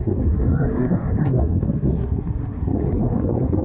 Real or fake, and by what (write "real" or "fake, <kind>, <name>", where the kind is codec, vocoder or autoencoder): fake, codec, SNAC